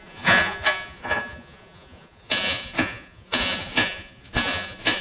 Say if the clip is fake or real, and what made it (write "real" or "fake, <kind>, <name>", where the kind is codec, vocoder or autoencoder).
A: fake, vocoder, Vocos